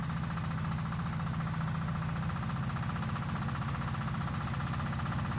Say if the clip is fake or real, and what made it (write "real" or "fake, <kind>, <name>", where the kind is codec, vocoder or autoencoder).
real